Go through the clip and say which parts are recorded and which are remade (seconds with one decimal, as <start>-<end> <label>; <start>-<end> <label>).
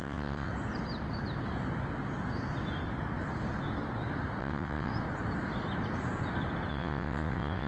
0.0-0.5 remade; 0.5-4.4 recorded; 4.4-4.9 remade; 4.9-6.7 recorded; 6.7-7.7 remade